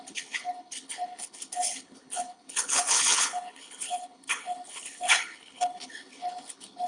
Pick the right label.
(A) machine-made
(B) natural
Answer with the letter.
A